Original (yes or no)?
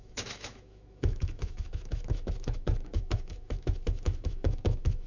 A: no